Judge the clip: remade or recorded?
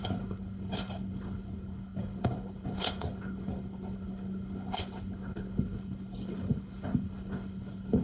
remade